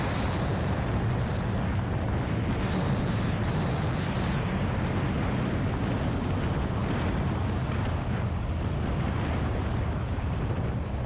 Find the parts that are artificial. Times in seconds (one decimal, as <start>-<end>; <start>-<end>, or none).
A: none